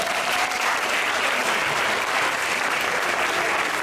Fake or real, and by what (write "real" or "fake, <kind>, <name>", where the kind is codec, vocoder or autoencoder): fake, vocoder, BigVGAN v2